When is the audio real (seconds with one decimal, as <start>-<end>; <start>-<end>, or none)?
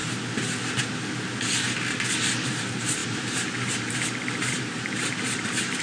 0.0-2.3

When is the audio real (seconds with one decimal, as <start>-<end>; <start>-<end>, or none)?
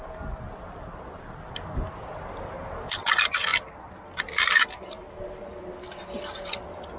0.0-7.0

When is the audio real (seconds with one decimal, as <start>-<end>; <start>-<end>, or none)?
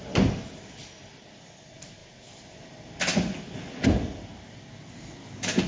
0.0-5.7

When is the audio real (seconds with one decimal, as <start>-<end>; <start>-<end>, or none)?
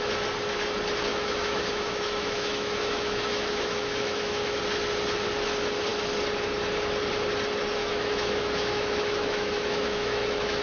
0.0-1.1; 4.6-7.8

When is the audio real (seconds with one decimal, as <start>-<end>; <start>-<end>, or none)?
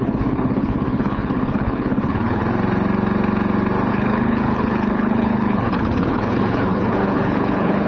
2.4-3.9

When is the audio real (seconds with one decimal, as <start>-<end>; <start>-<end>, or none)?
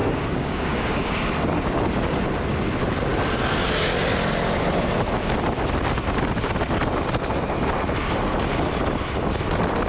1.1-9.9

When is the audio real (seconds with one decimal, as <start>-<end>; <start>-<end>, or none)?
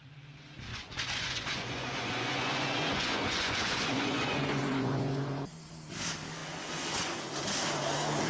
0.0-0.7; 5.7-6.4; 7.3-8.3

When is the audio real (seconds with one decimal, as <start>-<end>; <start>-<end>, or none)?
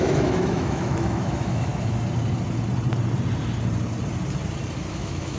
1.7-4.9